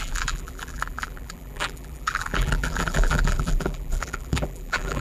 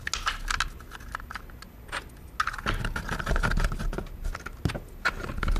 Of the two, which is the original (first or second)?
second